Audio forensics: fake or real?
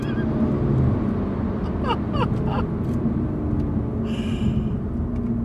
real